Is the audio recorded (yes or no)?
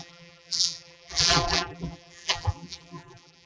no